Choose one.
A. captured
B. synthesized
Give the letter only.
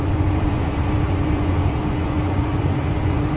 B